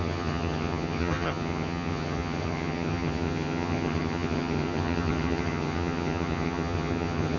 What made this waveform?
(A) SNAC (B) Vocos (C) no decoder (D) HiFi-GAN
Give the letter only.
D